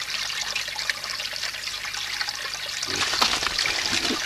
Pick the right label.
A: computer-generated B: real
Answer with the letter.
B